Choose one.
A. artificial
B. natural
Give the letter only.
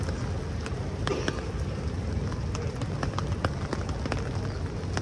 B